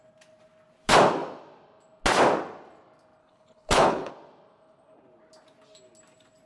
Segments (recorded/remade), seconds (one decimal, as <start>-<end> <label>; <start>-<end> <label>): 0.0-3.2 recorded; 3.2-4.1 remade; 4.1-6.5 recorded